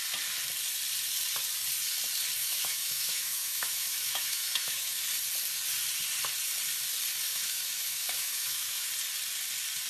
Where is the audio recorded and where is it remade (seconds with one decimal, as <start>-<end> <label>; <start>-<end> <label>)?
0.0-2.4 recorded; 2.4-5.0 remade; 5.0-7.3 recorded; 7.3-8.9 remade; 8.9-9.9 recorded